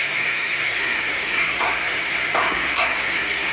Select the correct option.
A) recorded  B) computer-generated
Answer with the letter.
B